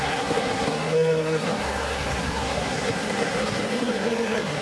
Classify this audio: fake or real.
fake